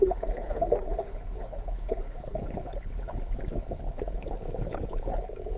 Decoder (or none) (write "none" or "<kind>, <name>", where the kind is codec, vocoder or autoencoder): codec, HILCodec